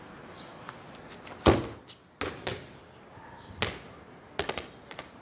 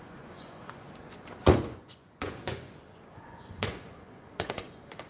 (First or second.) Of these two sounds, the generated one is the second